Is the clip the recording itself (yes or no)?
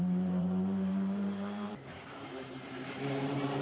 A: no